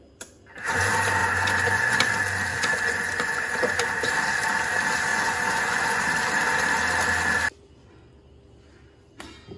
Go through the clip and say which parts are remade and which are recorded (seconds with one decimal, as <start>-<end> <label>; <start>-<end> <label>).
0.0-1.2 recorded; 1.2-2.1 remade; 2.1-2.5 recorded; 2.5-3.9 remade; 3.9-5.1 recorded; 5.1-6.0 remade; 6.0-9.6 recorded